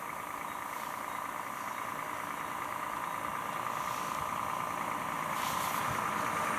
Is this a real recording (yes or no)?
yes